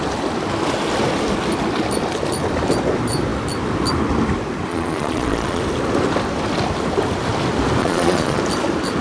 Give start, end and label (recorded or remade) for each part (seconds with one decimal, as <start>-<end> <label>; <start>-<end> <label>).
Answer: 0.0-4.7 recorded; 4.7-5.6 remade; 5.6-7.8 recorded; 7.8-8.4 remade; 8.4-9.0 recorded